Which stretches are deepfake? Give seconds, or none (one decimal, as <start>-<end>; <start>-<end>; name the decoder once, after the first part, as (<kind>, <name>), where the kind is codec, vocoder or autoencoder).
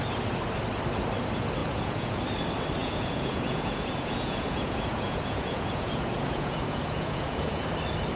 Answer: 1.6-2.2 (vocoder, Vocos); 2.8-7.7